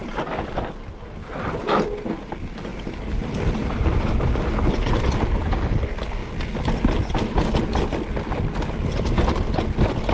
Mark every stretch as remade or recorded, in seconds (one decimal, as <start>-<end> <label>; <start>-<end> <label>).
0.0-1.6 remade; 1.6-2.7 recorded; 2.7-4.3 remade; 4.3-10.1 recorded